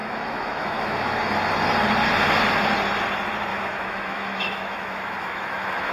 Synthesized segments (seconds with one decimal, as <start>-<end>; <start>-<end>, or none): 0.0-1.2; 3.5-5.9